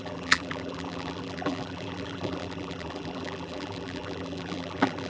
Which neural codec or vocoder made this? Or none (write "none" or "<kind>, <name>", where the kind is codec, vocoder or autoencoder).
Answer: vocoder, BigVGAN v2